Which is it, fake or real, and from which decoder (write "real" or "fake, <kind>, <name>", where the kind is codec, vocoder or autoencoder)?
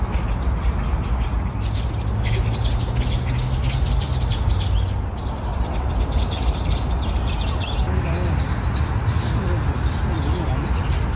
real